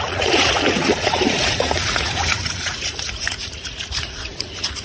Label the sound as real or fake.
fake